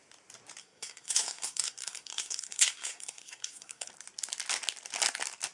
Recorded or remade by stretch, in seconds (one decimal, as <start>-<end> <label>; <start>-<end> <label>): 0.0-0.6 recorded; 0.6-3.9 remade; 3.9-5.5 recorded